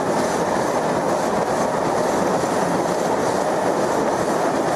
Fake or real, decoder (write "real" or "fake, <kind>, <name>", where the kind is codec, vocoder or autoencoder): real